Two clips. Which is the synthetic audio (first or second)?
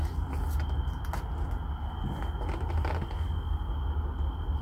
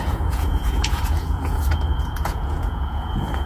second